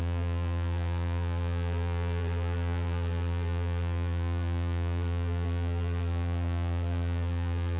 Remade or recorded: remade